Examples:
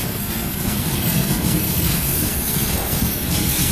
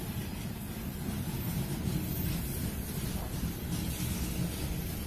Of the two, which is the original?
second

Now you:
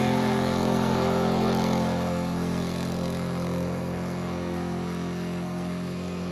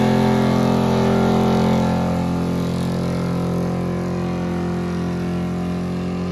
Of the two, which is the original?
second